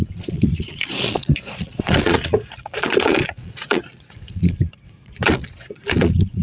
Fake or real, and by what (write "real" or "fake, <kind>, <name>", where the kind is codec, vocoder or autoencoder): fake, vocoder, Vocos